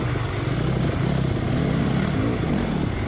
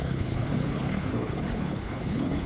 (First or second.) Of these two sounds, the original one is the first